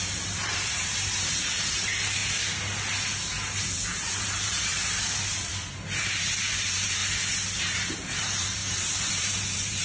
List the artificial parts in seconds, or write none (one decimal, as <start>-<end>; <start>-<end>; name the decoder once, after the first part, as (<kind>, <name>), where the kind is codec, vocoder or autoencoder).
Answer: 0.0-2.2 (vocoder, BigVGAN v2); 3.6-4.7; 5.3-7.0; 7.6-8.6; 9.1-9.8